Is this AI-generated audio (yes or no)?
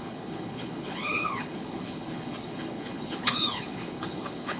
yes